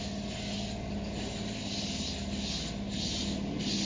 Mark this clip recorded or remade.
recorded